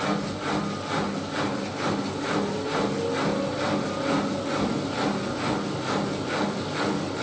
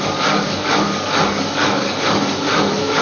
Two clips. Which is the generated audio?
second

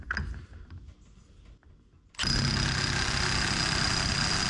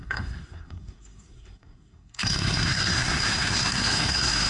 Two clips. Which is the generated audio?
second